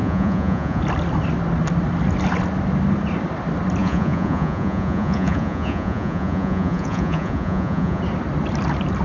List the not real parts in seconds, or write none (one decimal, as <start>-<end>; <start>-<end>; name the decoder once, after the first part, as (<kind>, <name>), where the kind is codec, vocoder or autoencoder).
0.0-0.8 (vocoder, Vocos); 3.8-8.0